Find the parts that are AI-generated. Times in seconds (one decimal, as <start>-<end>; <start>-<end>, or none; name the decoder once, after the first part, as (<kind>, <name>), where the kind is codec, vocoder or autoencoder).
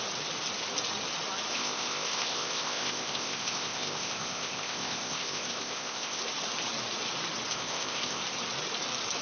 1.5-6.2 (codec, ZipCodec); 7.5-8.2